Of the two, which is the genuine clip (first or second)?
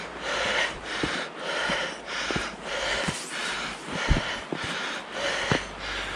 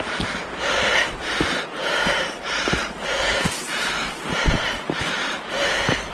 first